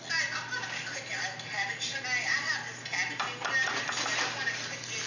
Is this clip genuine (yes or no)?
yes